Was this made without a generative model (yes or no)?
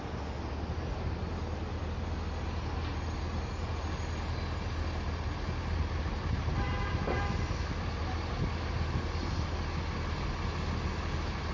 yes